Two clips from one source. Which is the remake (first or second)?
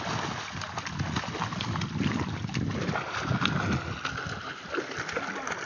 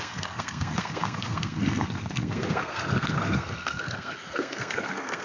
second